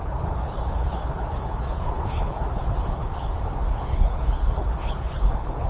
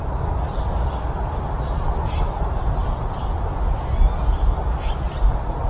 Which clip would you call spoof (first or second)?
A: first